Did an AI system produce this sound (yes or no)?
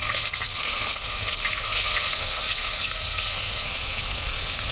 yes